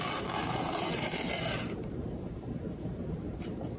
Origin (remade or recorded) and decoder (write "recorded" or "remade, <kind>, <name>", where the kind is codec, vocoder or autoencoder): remade, vocoder, BigVGAN v2